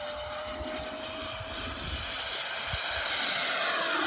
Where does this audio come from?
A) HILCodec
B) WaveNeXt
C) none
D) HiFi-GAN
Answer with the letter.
C